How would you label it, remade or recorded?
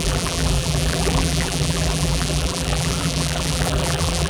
remade